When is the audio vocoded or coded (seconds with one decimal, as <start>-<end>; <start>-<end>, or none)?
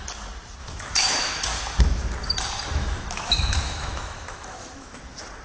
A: 0.6-1.8; 2.8-5.0